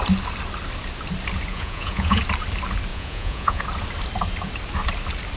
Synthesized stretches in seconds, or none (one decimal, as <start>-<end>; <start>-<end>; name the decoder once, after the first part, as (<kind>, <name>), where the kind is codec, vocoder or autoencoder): 1.5-2.2 (vocoder, Vocos); 2.9-3.6